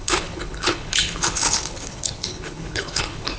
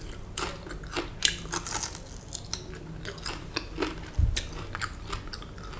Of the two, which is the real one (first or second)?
second